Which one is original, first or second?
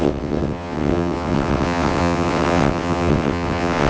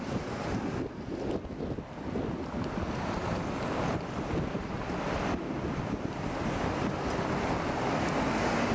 second